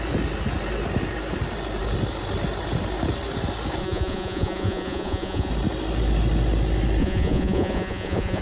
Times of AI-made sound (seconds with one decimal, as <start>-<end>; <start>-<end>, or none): 3.8-5.5; 7.0-8.4